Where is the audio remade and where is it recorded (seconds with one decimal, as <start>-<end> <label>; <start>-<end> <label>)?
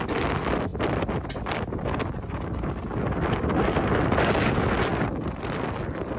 0.0-0.7 recorded; 0.7-4.4 remade; 4.4-6.2 recorded